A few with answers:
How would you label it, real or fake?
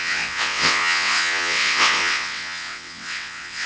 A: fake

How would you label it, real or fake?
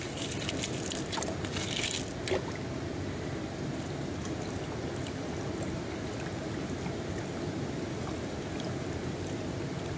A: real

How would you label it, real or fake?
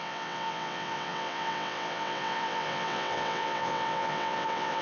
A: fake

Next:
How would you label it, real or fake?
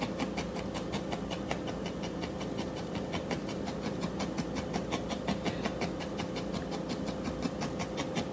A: real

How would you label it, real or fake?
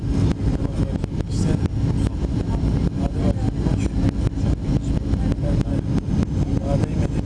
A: real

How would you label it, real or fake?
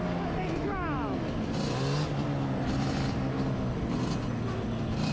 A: real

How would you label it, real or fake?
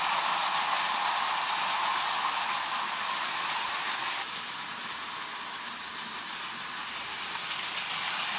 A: real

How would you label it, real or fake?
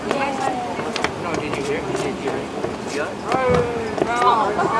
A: real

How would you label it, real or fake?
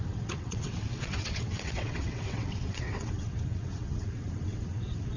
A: fake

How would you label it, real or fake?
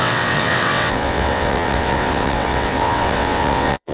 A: fake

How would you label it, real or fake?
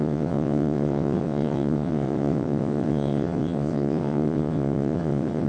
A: fake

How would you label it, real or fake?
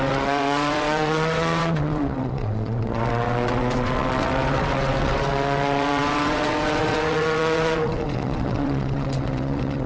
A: fake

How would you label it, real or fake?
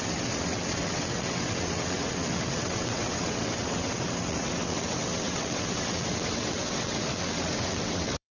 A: fake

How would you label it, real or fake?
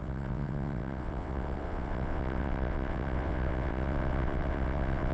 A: fake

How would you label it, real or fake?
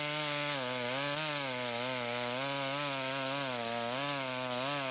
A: real